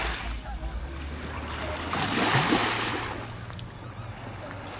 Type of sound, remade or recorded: recorded